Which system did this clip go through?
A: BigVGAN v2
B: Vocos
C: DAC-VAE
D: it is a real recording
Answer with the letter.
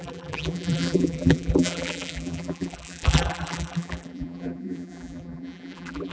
A